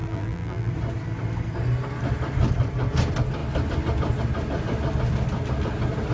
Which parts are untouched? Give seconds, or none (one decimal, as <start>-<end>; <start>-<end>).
0.7-6.1